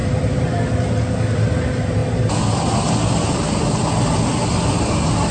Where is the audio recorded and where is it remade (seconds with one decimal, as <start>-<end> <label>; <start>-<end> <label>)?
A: 0.0-5.3 recorded